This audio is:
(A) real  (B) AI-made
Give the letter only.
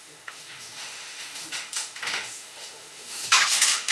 B